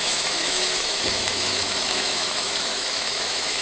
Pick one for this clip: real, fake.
fake